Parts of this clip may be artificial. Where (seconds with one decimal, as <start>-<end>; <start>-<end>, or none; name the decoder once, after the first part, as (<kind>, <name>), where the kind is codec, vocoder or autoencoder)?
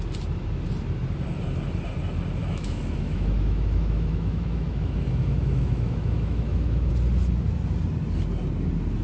2.4-6.9 (autoencoder, DAC-VAE)